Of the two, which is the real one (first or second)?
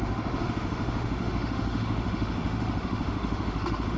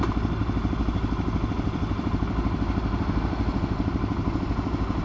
second